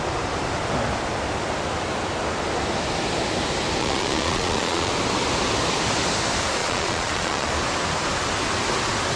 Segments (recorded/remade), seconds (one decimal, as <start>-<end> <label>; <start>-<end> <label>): 0.0-3.8 recorded; 3.8-4.9 remade; 4.9-6.6 recorded; 6.6-7.5 remade; 7.5-9.2 recorded